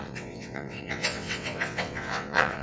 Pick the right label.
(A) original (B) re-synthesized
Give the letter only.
B